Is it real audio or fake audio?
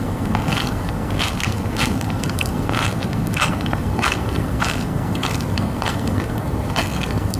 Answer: fake